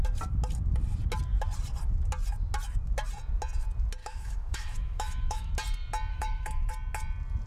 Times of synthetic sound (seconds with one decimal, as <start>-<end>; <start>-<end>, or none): 4.0-5.5; 6.1-6.7